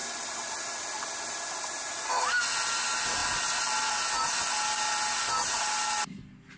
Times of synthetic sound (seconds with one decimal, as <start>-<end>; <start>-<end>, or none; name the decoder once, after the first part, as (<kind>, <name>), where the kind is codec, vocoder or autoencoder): none